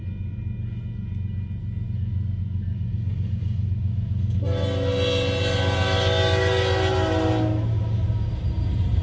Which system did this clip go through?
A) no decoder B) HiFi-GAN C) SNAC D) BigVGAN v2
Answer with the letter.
A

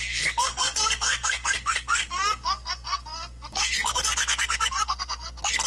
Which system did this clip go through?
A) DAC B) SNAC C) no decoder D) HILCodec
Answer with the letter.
B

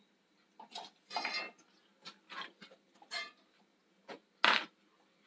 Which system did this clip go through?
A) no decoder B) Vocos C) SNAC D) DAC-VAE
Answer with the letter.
A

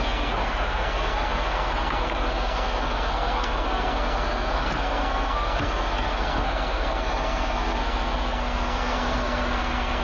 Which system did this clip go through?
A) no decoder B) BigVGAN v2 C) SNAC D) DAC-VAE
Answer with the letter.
C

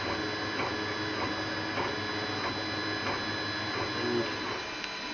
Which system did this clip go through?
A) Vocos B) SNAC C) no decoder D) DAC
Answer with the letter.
C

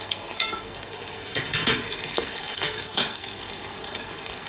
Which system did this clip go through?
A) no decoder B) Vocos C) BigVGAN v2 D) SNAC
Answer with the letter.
D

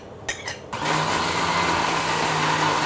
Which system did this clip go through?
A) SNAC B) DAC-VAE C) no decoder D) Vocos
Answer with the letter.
C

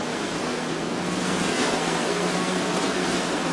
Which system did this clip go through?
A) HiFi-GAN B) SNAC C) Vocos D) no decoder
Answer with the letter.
B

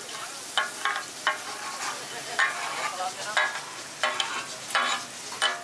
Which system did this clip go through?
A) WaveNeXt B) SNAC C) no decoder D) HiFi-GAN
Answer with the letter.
C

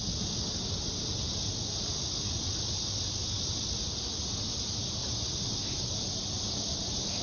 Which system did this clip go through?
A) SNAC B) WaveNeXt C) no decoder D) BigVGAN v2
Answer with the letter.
C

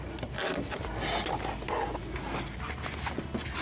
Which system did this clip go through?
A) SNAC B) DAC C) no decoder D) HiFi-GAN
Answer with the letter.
C